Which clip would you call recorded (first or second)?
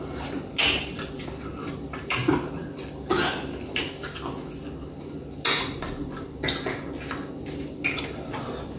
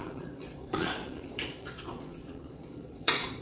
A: first